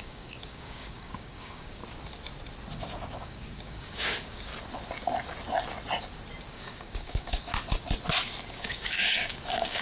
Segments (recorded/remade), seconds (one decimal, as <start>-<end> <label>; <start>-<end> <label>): 0.0-1.8 remade; 1.8-3.2 recorded; 3.2-4.5 remade; 4.5-6.5 recorded; 6.5-7.5 remade; 7.5-8.5 recorded; 8.5-9.8 remade